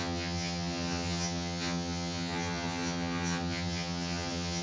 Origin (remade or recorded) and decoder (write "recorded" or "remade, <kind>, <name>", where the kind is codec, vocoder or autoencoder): remade, vocoder, HiFi-GAN